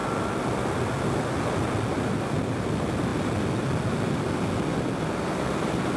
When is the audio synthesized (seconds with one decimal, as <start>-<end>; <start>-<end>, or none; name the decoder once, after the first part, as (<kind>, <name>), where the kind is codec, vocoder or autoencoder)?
none